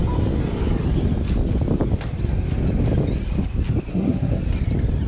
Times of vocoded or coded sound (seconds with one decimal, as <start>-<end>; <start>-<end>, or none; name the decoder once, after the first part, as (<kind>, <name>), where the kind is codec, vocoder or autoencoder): 3.9-4.4 (codec, SNAC)